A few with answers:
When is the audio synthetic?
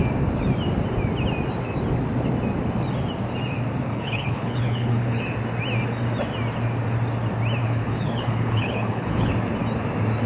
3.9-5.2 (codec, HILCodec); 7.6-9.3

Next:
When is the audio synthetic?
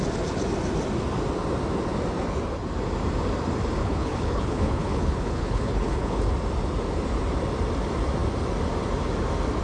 3.8-6.2 (codec, HILCodec)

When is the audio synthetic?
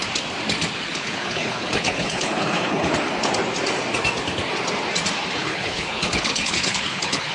0.9-2.9 (codec, HILCodec); 5.4-7.3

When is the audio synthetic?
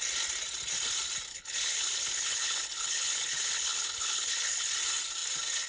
1.3-4.7 (codec, HILCodec)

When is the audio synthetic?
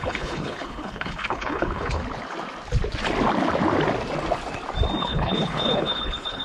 0.0-2.0 (codec, HILCodec); 5.0-6.4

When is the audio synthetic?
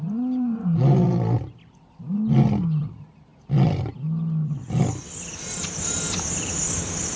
none